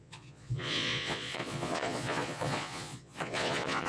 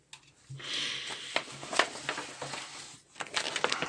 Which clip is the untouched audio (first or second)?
second